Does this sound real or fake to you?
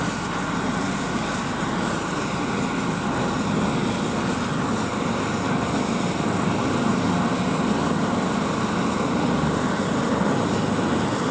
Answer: real